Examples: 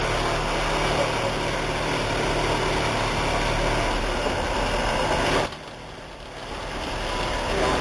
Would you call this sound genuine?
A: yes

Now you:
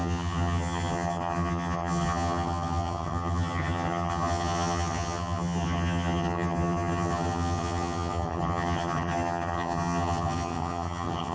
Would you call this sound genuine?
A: no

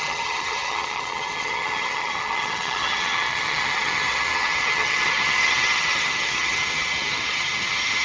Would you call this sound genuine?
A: no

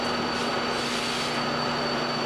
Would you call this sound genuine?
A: yes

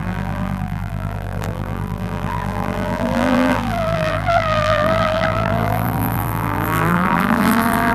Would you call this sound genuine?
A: no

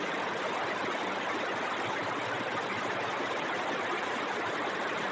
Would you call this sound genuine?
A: yes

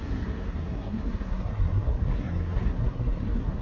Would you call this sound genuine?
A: no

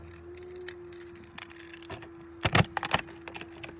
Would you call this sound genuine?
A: yes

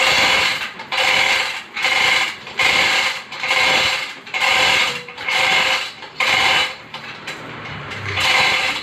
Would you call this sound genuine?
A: no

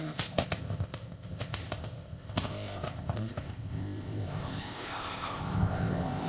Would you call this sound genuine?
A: no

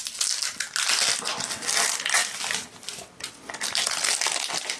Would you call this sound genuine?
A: yes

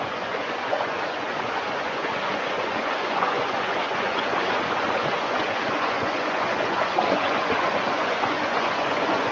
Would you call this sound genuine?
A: no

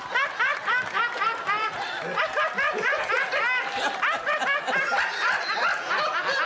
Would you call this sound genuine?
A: yes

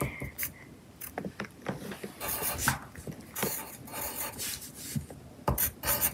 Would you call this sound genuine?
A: yes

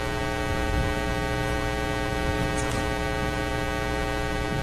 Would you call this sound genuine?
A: yes